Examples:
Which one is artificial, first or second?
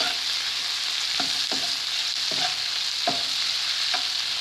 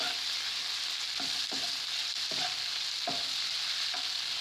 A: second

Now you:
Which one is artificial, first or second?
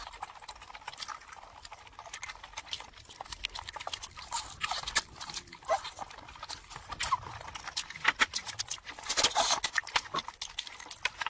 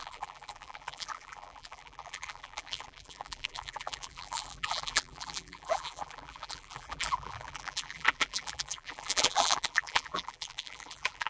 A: second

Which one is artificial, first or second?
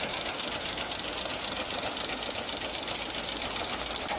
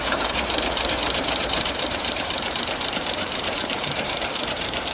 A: second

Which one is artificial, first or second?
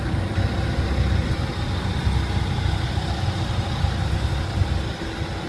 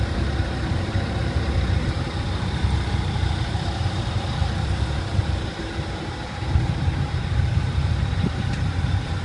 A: second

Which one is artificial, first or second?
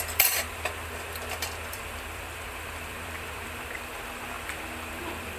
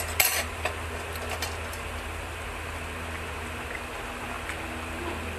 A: first